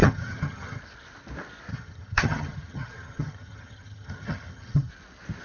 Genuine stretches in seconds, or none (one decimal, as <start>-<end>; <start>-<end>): 0.8-1.7; 4.9-5.4